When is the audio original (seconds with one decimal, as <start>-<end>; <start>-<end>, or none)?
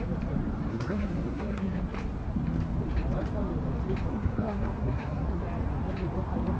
0.0-0.7; 1.8-4.1; 5.4-6.6